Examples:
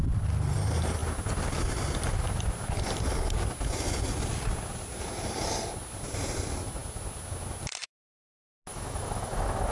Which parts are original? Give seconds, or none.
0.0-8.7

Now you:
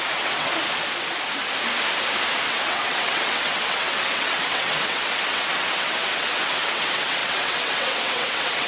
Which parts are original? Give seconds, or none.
0.5-2.5